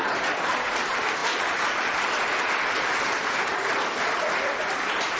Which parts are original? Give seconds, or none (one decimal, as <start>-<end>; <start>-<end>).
0.0-5.2